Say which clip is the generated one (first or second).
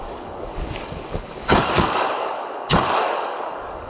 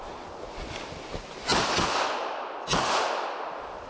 first